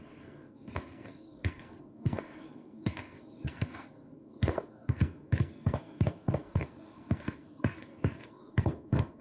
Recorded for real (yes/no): no